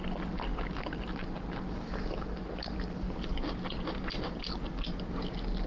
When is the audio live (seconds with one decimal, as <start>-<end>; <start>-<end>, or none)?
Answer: 0.0-5.7